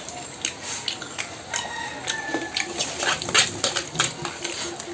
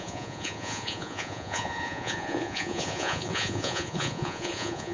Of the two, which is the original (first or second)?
first